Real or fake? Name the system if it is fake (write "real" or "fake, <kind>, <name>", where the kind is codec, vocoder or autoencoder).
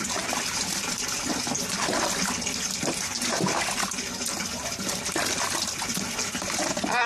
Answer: real